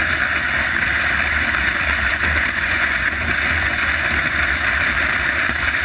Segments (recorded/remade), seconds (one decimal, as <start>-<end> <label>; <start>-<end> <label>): 0.0-2.1 recorded; 2.1-4.4 remade; 4.4-5.8 recorded